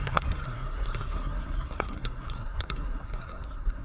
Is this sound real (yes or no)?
no